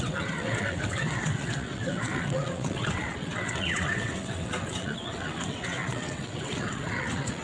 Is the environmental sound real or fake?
fake